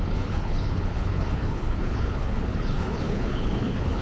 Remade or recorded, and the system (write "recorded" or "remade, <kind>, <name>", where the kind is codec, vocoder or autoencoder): remade, codec, HILCodec